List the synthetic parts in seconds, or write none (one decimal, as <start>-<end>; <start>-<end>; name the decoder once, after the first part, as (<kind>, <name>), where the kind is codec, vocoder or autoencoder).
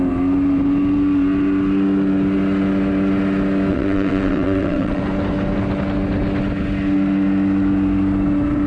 3.7-5.0 (vocoder, WaveNeXt)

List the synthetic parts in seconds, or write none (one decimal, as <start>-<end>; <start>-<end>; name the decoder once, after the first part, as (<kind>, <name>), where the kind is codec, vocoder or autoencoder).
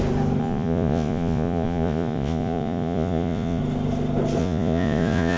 0.4-3.6 (vocoder, Vocos); 4.4-5.4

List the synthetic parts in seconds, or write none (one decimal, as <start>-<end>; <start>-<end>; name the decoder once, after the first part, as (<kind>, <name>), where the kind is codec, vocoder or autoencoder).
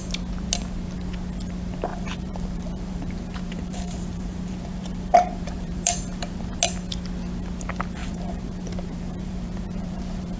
1.9-6.6 (vocoder, BigVGAN v2); 8.0-10.4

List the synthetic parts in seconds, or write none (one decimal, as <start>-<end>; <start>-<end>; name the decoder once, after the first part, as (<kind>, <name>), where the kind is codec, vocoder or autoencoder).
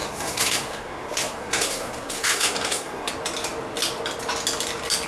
0.0-3.1 (codec, SNAC)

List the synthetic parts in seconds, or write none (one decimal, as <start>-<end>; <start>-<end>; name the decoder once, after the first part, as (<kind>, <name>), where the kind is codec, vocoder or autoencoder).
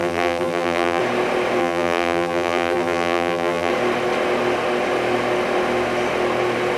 0.0-1.0 (vocoder, BigVGAN v2); 1.6-3.7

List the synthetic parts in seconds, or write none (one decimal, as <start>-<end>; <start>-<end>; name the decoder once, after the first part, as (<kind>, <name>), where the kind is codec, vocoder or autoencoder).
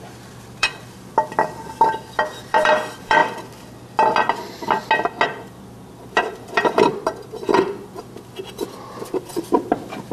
0.0-3.2 (vocoder, BigVGAN v2); 5.4-10.1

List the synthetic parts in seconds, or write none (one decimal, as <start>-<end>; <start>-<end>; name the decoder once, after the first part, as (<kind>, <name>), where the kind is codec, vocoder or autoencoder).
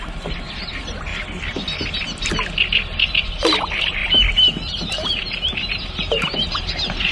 0.0-1.1 (vocoder, BigVGAN v2); 3.6-4.0; 4.9-7.1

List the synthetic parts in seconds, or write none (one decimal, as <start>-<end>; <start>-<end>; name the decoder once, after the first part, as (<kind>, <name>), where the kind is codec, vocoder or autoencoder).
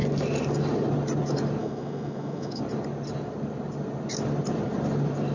1.6-2.6 (autoencoder, DAC-VAE)